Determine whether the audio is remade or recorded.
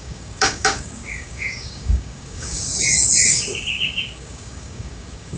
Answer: remade